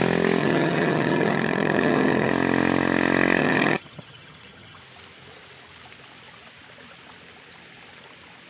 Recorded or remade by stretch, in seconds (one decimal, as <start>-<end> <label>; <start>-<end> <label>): 0.0-0.4 recorded; 0.4-2.3 remade; 2.3-3.4 recorded; 3.4-4.8 remade; 4.8-8.5 recorded